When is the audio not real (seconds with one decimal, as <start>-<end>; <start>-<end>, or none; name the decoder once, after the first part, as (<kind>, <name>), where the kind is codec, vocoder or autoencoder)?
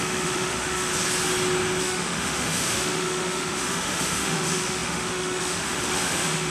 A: 0.0-0.9 (autoencoder, DAC-VAE); 1.8-6.5